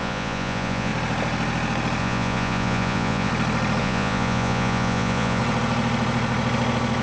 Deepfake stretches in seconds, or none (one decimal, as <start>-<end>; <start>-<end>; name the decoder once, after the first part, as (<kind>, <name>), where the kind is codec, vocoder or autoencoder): 0.0-0.9 (vocoder, Vocos); 2.0-3.3; 3.8-5.4